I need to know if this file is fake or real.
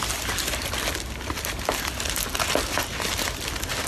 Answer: real